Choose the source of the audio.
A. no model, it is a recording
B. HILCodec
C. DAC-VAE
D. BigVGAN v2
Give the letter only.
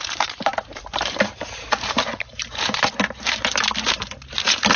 D